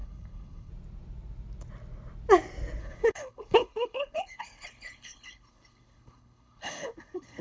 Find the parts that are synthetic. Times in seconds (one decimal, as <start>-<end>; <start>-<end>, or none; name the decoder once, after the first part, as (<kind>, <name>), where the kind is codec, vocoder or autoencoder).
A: 0.0-0.7 (codec, HILCodec); 2.8-7.4